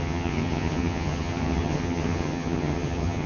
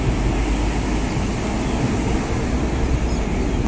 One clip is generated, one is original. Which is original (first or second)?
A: second